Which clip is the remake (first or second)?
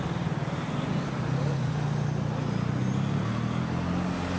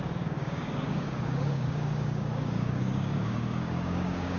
second